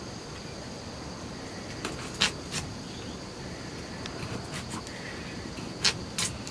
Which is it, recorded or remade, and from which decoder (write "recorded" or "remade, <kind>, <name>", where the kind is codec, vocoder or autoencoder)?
recorded